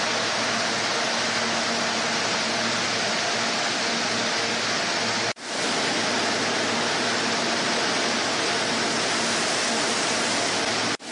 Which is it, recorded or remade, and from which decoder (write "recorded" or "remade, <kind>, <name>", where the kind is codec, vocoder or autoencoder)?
recorded